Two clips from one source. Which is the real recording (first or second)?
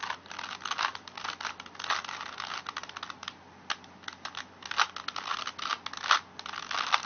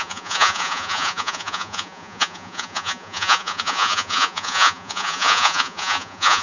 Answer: first